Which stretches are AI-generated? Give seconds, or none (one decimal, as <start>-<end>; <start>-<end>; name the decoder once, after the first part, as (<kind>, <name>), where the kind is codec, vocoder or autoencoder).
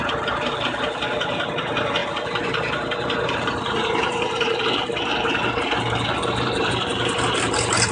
0.0-7.9 (vocoder, BigVGAN v2)